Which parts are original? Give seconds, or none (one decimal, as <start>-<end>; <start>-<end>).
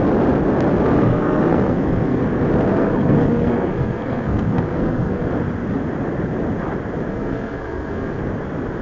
0.0-1.0; 2.2-2.7; 5.3-7.1; 8.2-8.8